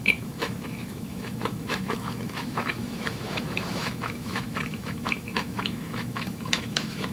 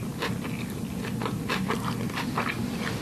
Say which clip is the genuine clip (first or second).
second